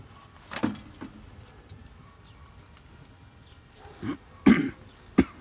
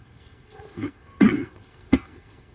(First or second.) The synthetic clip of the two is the second